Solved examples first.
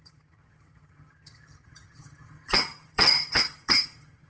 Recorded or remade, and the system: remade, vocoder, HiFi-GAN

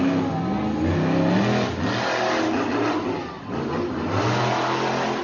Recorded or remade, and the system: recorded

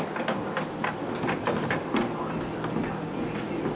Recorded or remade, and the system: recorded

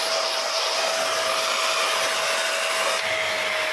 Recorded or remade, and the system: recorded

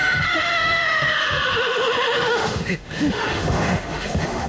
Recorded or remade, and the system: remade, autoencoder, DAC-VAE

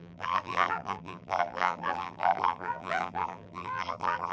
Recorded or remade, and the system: remade, vocoder, BigVGAN v2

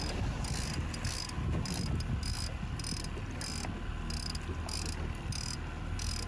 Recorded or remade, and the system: recorded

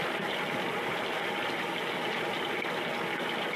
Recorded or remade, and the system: recorded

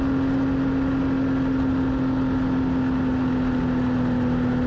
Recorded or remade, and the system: recorded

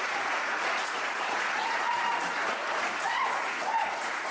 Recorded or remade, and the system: remade, vocoder, Vocos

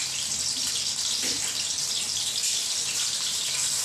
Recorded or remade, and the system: recorded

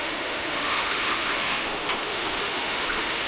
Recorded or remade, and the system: remade, autoencoder, DAC-VAE